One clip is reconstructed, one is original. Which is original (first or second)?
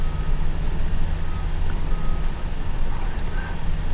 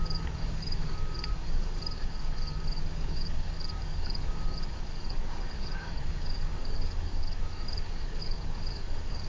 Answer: first